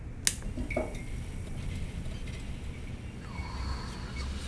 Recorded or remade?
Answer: recorded